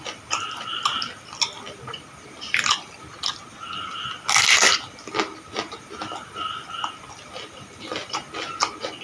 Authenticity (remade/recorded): recorded